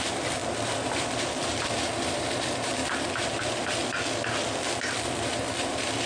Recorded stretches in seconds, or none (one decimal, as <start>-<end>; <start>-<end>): 0.4-1.0; 2.8-3.4; 3.8-5.4